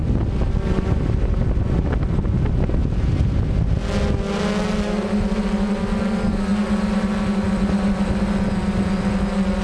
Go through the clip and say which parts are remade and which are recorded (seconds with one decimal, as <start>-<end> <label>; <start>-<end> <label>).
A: 0.0-9.6 recorded